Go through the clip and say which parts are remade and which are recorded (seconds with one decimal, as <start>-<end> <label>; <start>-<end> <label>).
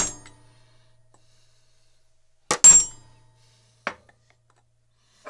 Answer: 0.0-5.3 recorded